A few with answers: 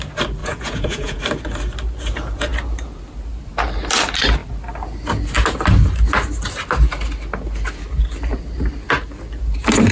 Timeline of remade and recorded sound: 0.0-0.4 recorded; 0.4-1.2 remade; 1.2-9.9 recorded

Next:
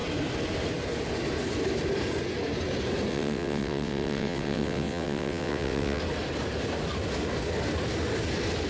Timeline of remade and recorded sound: 0.0-3.1 recorded; 3.1-6.0 remade; 6.0-8.7 recorded

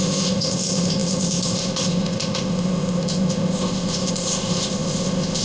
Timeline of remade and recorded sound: 0.0-5.4 remade

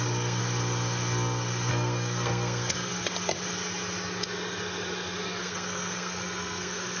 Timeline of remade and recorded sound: 0.0-0.4 remade; 0.4-1.7 recorded; 1.7-2.9 remade; 2.9-5.4 recorded; 5.4-7.0 remade

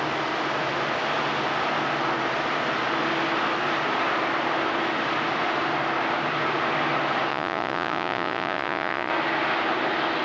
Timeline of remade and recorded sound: 0.0-7.3 recorded; 7.3-9.1 remade; 9.1-10.2 recorded

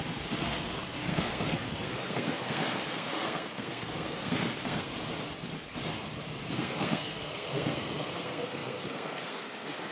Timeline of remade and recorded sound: 0.0-4.9 remade; 4.9-6.5 recorded; 6.5-9.9 remade